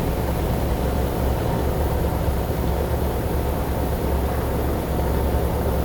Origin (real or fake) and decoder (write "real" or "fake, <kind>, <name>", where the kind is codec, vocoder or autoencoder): real